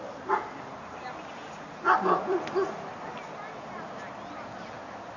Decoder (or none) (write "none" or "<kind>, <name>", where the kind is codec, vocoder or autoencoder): none